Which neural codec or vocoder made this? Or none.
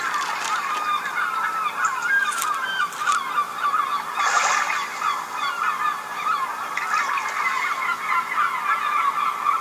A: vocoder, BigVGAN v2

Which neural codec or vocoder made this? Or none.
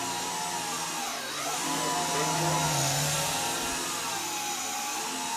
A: none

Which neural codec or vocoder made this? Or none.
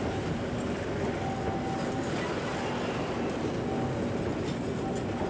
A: none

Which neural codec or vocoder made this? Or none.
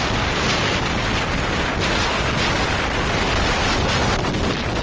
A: none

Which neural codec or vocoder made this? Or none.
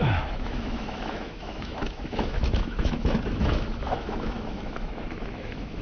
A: autoencoder, DAC-VAE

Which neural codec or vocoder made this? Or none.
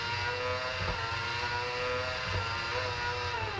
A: none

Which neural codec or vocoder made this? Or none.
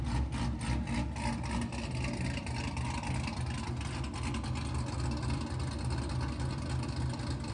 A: none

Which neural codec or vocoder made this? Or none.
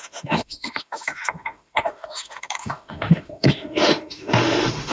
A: autoencoder, DAC-VAE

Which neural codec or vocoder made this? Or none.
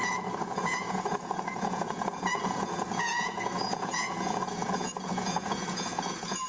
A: vocoder, Vocos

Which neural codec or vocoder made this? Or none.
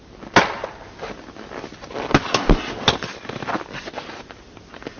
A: none